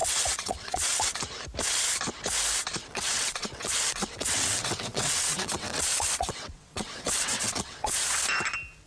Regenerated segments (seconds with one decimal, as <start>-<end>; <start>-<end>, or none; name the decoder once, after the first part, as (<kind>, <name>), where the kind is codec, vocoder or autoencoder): 0.0-1.2 (vocoder, WaveNeXt); 2.8-8.0